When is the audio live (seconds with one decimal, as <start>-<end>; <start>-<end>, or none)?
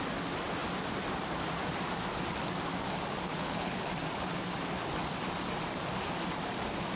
0.0-3.3; 3.9-7.0